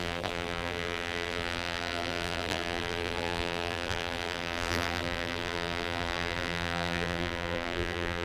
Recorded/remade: remade